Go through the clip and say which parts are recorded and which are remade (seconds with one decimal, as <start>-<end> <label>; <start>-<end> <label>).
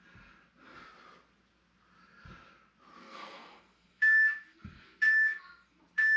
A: 0.0-3.0 recorded; 3.0-5.8 remade; 5.8-6.2 recorded